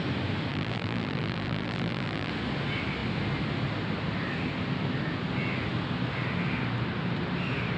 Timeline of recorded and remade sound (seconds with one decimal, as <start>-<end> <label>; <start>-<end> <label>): 0.0-0.5 recorded; 0.5-2.3 remade; 2.3-7.8 recorded